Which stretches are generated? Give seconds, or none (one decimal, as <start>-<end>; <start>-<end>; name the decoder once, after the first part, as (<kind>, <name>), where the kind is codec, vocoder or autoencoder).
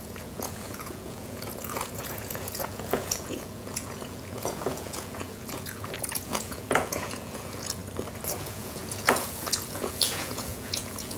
0.0-7.8 (vocoder, Vocos); 8.4-11.2